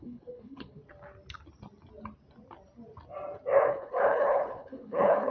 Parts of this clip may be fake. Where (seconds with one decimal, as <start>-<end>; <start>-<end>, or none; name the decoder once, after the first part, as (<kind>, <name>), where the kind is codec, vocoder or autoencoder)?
0.0-0.8 (codec, HILCodec); 3.7-5.3